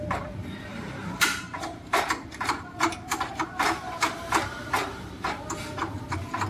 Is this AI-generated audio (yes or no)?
yes